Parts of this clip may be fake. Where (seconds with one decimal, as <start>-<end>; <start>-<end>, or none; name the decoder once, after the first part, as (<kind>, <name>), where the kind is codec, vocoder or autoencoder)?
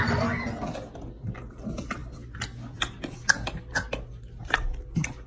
none